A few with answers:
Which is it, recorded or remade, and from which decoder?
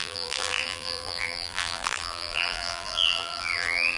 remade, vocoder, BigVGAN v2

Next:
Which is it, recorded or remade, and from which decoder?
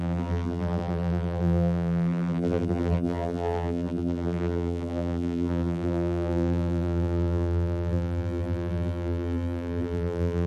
remade, vocoder, BigVGAN v2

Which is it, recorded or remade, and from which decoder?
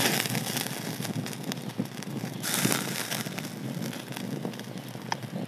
recorded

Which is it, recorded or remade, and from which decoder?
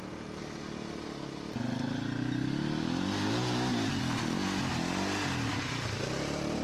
recorded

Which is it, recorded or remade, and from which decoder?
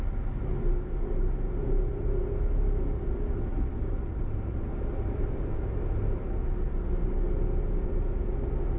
recorded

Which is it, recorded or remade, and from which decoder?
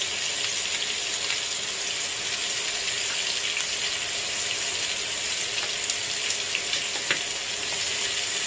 recorded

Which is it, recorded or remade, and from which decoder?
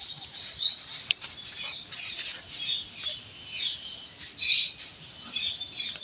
remade, vocoder, BigVGAN v2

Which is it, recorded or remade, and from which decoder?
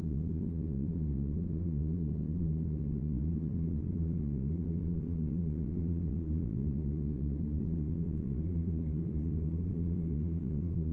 remade, vocoder, Vocos